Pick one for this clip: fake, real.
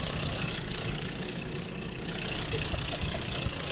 fake